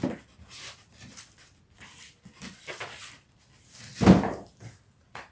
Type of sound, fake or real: fake